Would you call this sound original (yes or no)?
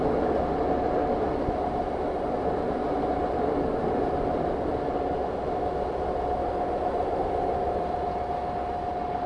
yes